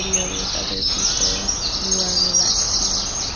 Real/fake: real